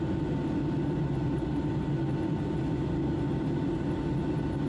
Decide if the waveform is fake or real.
real